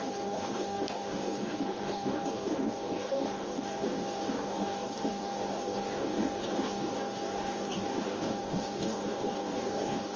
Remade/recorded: remade